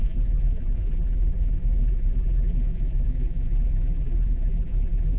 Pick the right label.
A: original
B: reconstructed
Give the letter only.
B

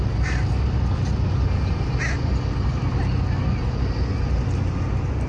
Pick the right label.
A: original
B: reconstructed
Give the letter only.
A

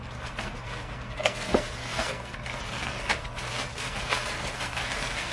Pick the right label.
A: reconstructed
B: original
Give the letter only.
A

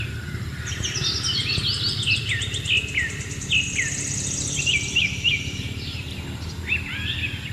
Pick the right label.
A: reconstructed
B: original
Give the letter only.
B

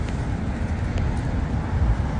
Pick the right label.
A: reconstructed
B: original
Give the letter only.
B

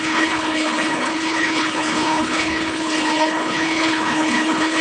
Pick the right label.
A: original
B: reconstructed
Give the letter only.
B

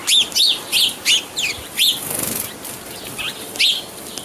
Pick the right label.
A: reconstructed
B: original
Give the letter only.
B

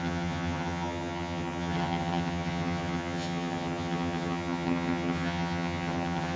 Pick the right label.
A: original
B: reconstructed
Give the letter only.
B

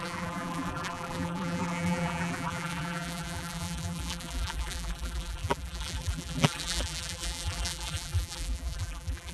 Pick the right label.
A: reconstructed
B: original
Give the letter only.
A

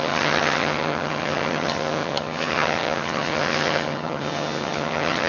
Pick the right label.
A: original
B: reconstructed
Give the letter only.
B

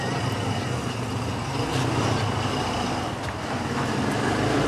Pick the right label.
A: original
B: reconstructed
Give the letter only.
A